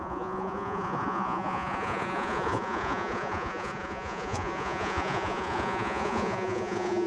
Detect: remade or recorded remade